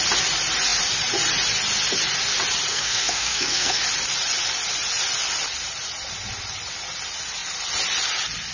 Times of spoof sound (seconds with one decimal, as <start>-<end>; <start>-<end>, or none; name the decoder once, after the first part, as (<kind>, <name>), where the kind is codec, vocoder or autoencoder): 2.7-3.8 (codec, SNAC)